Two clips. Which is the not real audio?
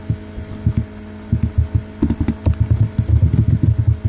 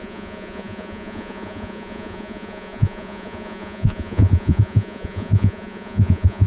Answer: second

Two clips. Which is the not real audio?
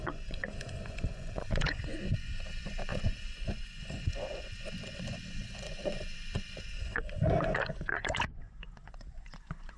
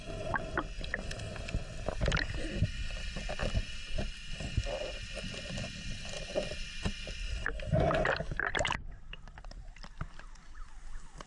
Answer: first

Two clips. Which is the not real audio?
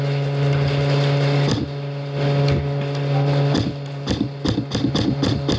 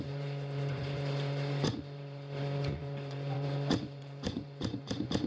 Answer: second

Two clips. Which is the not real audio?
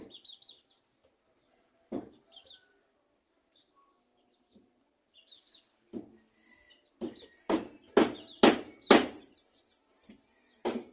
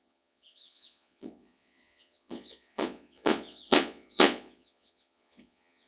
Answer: second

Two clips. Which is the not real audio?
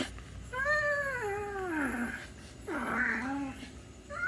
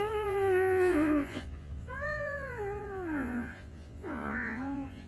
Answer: second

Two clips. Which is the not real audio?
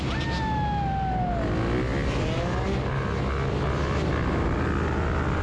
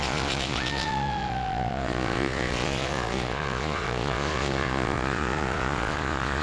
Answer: second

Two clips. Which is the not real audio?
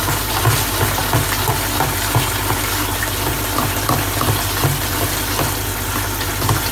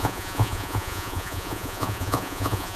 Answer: second